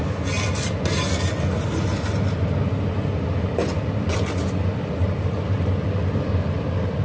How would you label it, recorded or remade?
recorded